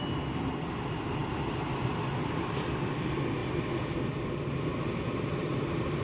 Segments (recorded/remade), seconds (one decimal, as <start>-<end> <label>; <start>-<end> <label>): 0.0-6.0 recorded